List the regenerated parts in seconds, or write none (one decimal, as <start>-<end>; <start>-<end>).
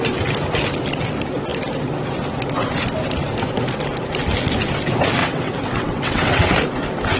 5.2-6.5